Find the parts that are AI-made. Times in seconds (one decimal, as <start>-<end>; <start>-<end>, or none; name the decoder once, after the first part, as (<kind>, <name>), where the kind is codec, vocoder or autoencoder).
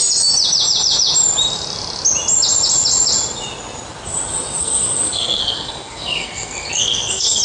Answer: 4.6-7.4 (codec, SNAC)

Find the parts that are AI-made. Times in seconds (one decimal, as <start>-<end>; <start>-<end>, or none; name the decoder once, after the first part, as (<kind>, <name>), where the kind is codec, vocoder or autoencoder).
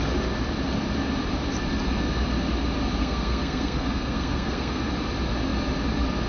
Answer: 3.0-4.9 (codec, SNAC)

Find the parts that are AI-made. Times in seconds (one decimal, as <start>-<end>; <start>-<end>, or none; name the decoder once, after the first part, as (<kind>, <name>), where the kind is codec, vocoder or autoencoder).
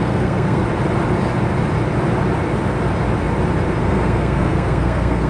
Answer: 0.0-0.6 (codec, SNAC); 3.8-5.3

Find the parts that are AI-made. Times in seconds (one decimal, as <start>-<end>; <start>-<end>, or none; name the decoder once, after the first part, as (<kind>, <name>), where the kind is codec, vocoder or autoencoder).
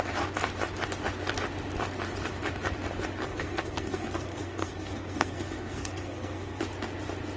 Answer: 3.2-6.6 (codec, SNAC)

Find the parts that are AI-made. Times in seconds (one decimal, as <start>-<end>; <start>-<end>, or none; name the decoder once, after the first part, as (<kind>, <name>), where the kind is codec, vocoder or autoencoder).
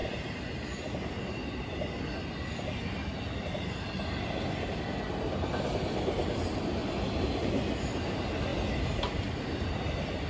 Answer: none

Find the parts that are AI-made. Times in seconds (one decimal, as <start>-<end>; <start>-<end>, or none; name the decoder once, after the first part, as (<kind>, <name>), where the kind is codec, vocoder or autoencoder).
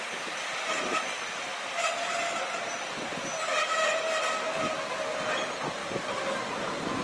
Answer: none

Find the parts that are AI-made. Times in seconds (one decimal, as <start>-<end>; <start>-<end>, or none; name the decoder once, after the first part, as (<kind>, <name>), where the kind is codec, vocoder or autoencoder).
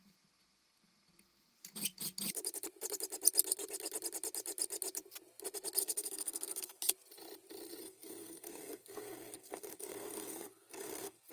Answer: 5.8-6.8 (codec, SNAC); 7.8-11.3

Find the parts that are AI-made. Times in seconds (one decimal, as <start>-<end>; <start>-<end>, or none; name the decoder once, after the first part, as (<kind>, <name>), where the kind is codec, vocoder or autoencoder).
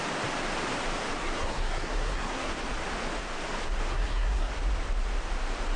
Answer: 1.2-2.5 (codec, SNAC); 3.9-4.5